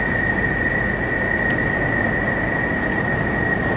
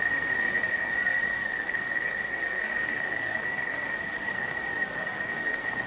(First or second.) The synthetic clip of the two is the second